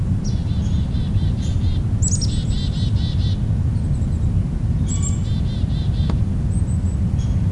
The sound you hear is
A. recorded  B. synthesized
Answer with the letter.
A